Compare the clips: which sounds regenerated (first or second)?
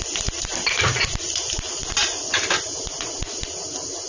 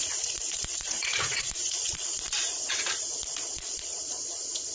second